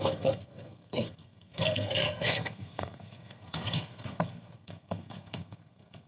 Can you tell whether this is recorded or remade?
remade